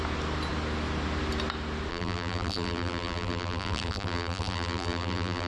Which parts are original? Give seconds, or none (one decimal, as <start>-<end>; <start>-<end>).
0.0-1.9